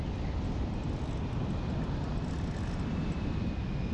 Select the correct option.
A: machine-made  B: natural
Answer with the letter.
B